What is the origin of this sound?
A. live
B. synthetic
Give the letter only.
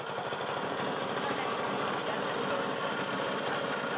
A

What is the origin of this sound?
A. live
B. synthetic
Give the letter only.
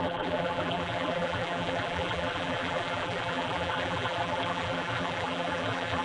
B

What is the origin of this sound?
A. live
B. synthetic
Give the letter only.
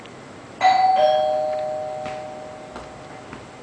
A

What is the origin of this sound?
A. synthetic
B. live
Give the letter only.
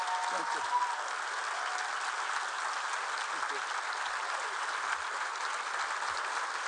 B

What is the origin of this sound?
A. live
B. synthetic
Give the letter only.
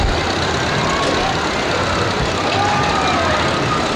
A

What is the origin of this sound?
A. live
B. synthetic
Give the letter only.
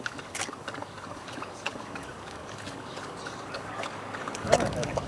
B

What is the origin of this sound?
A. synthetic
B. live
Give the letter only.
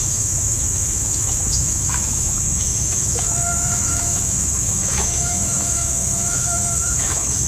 A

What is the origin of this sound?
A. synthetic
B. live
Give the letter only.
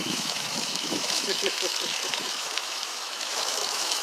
A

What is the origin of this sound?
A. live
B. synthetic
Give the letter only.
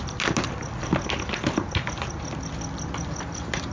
A